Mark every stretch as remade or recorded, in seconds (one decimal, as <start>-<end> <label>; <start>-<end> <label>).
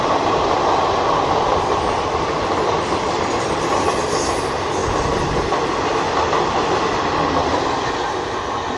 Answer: 0.0-8.8 recorded